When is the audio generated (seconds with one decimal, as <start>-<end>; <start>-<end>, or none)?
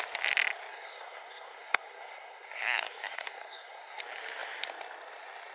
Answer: 0.7-4.0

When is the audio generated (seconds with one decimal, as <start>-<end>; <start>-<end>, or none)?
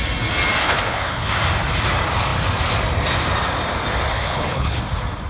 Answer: 0.6-1.3; 4.1-4.8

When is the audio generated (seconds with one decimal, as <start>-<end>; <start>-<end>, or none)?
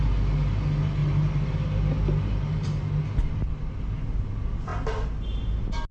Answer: none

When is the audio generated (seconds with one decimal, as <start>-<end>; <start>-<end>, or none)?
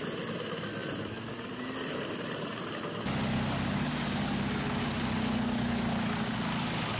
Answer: 0.8-2.7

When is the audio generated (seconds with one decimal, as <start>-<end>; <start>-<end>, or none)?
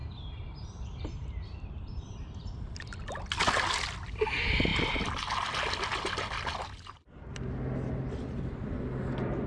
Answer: 0.0-2.5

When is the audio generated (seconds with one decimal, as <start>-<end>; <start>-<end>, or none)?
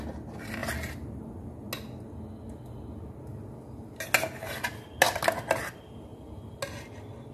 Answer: 6.1-6.6